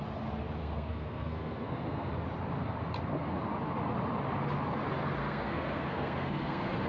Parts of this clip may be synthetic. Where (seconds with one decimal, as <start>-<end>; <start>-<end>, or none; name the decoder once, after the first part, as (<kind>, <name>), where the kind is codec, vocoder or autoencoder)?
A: 0.6-2.1 (codec, SNAC); 5.2-6.9